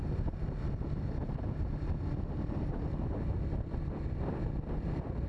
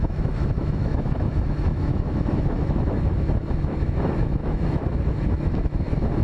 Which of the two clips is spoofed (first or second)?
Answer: second